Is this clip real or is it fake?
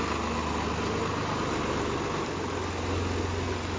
real